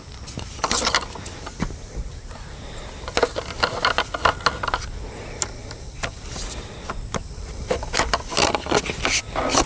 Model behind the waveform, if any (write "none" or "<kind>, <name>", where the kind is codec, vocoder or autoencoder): none